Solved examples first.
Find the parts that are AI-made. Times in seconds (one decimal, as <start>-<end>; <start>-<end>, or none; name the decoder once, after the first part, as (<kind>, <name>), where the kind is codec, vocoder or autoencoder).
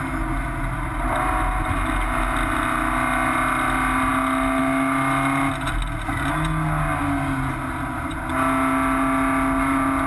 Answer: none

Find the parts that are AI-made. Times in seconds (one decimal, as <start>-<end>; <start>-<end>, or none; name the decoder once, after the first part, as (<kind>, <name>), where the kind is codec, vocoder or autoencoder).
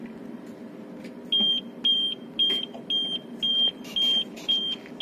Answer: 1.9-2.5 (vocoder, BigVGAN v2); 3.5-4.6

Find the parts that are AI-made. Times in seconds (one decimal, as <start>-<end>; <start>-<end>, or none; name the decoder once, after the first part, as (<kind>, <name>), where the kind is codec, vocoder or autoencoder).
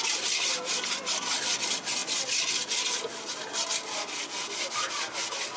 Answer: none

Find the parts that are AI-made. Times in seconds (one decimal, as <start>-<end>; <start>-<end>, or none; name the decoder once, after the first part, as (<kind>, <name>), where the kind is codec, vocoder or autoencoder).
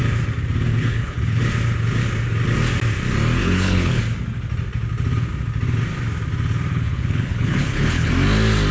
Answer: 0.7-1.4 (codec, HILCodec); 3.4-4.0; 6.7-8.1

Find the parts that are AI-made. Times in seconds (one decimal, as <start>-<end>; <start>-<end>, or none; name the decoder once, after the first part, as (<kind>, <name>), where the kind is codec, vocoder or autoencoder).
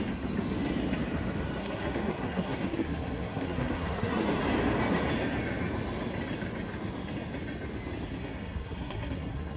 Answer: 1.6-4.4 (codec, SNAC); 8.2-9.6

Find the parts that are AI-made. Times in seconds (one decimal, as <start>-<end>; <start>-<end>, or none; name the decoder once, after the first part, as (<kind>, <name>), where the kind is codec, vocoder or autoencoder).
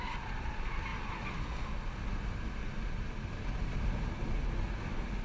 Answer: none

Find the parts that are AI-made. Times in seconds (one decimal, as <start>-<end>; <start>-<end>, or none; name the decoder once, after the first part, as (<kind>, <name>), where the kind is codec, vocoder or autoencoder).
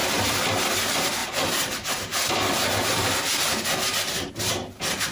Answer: 0.0-0.5 (vocoder, BigVGAN v2); 1.2-4.3